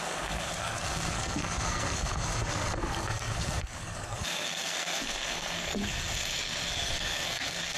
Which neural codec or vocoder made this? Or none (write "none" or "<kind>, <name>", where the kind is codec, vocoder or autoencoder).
codec, SNAC